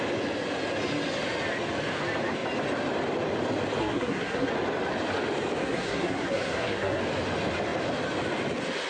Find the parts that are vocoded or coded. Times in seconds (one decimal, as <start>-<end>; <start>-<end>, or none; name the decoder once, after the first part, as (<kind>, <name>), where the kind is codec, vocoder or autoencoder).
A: 3.8-4.5 (codec, SNAC); 5.6-7.0